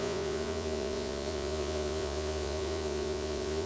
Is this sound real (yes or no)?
no